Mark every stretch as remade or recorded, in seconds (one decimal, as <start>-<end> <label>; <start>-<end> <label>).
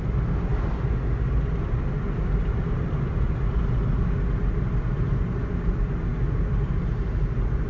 0.0-7.7 recorded